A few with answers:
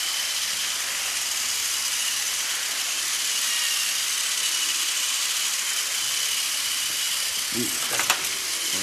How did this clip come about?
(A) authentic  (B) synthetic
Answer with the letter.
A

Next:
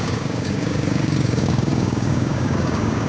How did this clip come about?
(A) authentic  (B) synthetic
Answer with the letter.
B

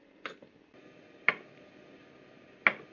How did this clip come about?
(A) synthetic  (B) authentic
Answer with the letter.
B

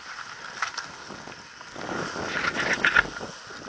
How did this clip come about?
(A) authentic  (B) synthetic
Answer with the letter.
A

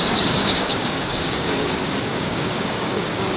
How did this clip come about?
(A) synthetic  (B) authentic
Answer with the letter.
A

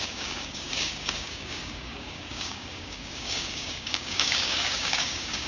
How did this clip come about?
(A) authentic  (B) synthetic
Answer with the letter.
B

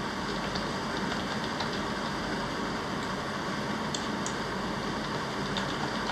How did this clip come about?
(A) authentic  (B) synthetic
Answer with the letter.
A